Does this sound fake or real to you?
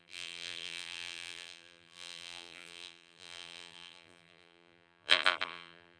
fake